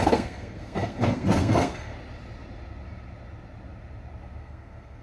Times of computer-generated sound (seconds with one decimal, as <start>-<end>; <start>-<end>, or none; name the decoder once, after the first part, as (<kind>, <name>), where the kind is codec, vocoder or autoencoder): 0.0-1.9 (codec, SNAC); 4.4-5.0